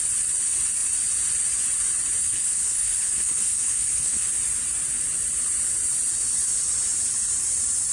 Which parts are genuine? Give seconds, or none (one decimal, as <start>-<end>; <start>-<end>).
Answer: 0.0-2.2; 4.3-7.9

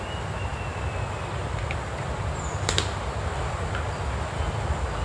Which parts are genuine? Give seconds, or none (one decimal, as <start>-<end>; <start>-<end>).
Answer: 0.0-5.0